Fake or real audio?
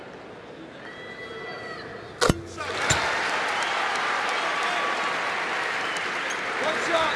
real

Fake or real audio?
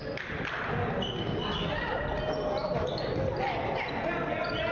real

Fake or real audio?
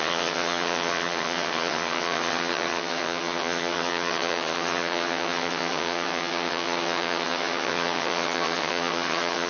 fake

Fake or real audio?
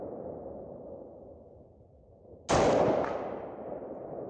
real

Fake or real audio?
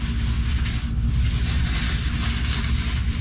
real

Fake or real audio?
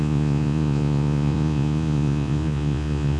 fake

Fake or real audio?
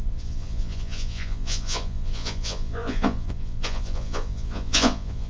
fake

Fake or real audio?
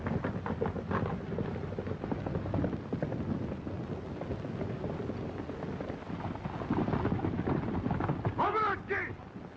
real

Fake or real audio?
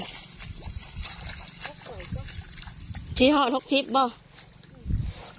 real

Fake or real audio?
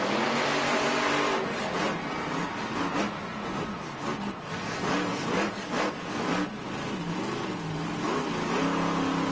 real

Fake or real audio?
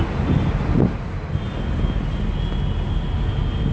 real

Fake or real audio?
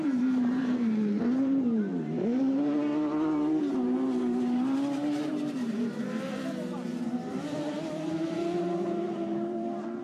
fake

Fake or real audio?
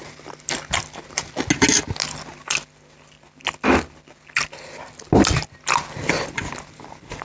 real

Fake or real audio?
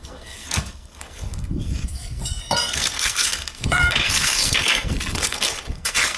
fake